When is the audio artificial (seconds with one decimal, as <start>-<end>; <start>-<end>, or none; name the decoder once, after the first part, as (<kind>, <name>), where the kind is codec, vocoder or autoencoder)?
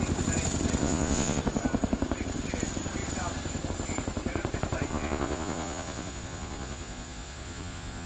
0.8-1.4 (vocoder, Vocos); 4.9-8.1